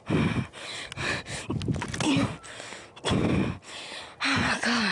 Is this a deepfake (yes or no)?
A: no